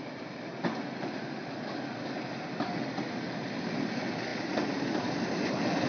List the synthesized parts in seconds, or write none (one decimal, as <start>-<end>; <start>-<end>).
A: none